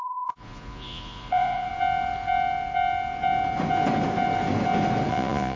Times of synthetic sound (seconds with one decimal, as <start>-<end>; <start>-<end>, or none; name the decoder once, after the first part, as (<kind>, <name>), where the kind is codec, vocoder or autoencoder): 0.0-1.7 (vocoder, Vocos); 5.1-5.6

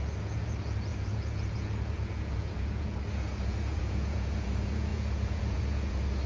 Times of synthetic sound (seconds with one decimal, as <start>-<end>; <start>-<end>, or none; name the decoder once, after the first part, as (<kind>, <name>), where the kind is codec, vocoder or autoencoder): 0.0-6.3 (vocoder, Vocos)

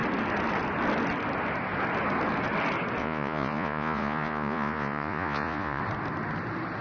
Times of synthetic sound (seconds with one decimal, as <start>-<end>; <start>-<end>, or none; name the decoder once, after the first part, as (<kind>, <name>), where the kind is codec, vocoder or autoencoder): 3.0-5.8 (vocoder, Vocos)

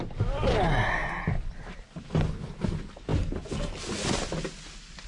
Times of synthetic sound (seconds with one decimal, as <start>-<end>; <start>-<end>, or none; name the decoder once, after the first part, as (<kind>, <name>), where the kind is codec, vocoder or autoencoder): none

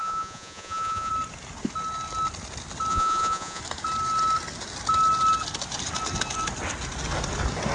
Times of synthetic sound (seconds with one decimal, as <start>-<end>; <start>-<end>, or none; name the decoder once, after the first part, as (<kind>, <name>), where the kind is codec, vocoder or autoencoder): 0.0-1.1 (vocoder, Vocos); 2.9-3.6

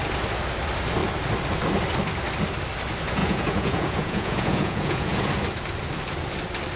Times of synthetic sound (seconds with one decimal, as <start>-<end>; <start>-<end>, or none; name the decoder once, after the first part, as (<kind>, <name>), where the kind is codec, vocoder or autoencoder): 3.2-5.3 (vocoder, Vocos)

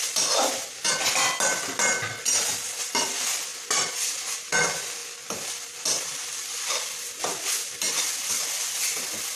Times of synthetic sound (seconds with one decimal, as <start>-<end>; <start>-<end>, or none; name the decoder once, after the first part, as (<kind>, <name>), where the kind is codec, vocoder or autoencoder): none